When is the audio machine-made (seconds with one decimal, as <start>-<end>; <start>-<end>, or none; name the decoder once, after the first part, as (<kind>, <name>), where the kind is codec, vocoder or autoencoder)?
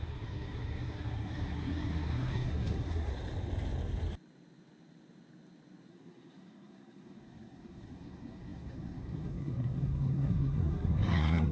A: 0.0-3.1 (codec, SNAC); 5.9-11.5